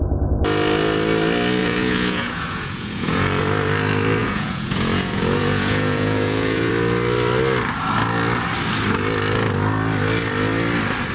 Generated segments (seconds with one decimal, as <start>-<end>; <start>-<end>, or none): 1.6-3.4; 4.2-6.7